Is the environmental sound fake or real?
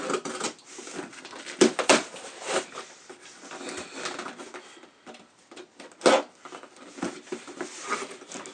real